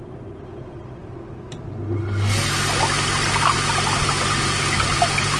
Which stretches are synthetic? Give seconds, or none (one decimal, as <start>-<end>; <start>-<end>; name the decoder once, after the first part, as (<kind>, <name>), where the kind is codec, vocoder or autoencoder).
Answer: none